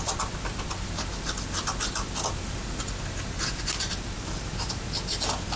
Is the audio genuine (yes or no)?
yes